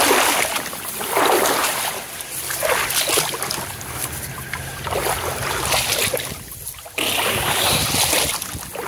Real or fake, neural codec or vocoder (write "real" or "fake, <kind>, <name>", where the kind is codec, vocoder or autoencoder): real